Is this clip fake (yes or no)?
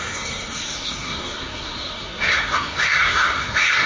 yes